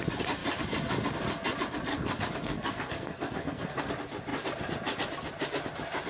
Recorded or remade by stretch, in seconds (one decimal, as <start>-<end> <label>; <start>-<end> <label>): 0.0-1.9 recorded; 1.9-3.9 remade; 3.9-6.1 recorded